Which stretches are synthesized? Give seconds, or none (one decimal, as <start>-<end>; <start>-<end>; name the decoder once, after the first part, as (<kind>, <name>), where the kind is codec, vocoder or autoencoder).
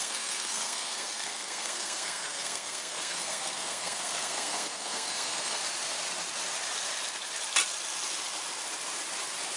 0.0-5.6 (codec, SNAC)